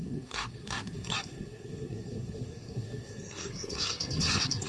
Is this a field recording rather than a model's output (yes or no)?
no